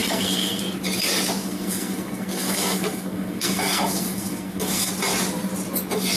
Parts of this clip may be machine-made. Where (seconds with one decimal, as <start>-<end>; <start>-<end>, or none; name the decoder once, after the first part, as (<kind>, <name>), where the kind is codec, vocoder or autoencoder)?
0.0-0.6 (codec, SNAC); 1.4-4.9